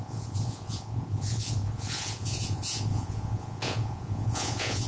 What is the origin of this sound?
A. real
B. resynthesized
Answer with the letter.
B